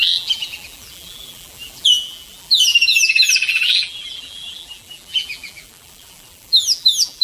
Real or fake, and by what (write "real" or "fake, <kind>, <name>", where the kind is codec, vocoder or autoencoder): fake, vocoder, BigVGAN v2